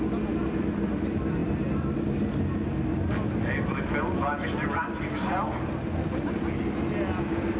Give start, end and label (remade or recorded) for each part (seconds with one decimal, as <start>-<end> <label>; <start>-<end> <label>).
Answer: 0.0-7.6 recorded